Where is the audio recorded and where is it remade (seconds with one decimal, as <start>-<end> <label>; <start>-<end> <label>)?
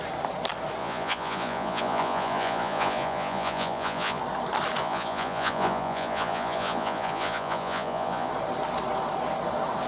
0.0-0.8 recorded; 0.8-4.2 remade; 4.2-4.8 recorded; 4.8-8.3 remade; 8.3-9.9 recorded